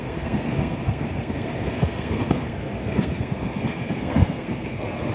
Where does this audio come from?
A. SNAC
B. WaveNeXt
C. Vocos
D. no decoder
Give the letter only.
A